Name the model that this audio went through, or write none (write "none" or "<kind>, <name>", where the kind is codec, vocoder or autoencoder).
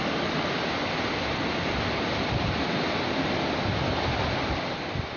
none